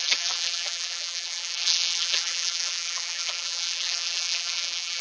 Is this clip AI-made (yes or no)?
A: yes